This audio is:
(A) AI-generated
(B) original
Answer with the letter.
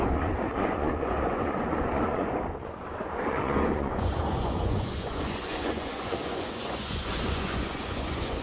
A